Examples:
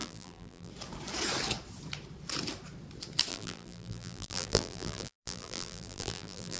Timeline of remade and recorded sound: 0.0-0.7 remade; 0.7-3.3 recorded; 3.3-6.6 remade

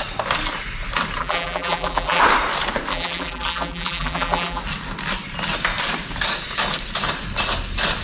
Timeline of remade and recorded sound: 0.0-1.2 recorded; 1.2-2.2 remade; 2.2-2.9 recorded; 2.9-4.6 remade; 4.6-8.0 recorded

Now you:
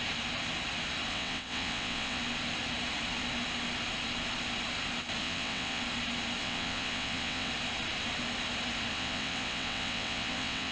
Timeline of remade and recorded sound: 0.0-1.1 recorded; 1.1-2.2 remade; 2.2-5.2 recorded; 5.2-5.8 remade; 5.8-6.4 recorded; 6.4-7.5 remade; 7.5-8.9 recorded; 8.9-10.7 remade

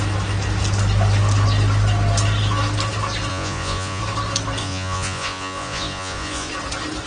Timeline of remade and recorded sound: 0.0-3.3 recorded; 3.3-4.0 remade; 4.0-4.6 recorded; 4.6-6.5 remade; 6.5-7.1 recorded